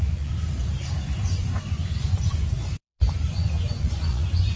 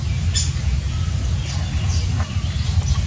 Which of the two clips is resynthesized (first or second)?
first